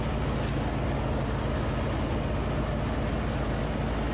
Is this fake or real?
real